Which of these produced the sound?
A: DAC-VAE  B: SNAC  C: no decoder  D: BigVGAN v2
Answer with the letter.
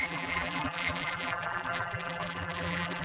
D